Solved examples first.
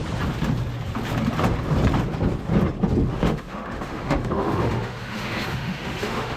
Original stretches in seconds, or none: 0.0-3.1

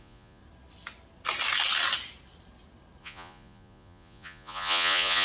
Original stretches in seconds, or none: 0.4-3.0

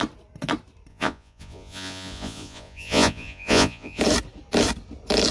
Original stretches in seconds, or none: 0.0-0.9; 4.0-5.3

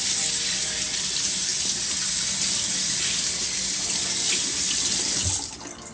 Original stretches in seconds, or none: 0.0-5.9

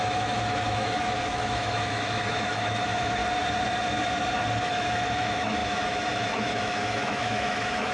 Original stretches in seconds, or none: 3.2-4.6

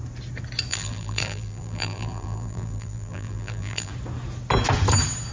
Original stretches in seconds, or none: 0.0-0.7; 3.9-5.3